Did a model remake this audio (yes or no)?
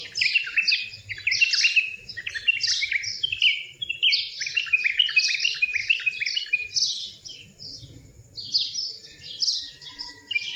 no